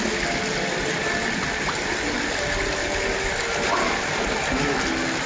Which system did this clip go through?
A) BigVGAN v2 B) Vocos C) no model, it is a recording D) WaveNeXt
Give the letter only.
C